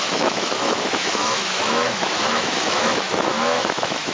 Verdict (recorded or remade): remade